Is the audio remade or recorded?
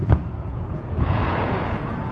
remade